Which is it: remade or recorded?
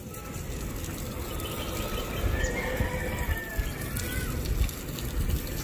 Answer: recorded